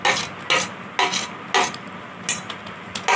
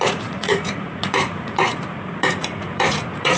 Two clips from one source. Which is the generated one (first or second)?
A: second